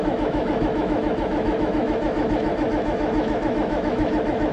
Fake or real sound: fake